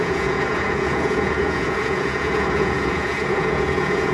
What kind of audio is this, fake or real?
fake